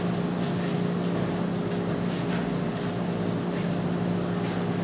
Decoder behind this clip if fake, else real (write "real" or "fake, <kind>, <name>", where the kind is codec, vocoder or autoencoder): real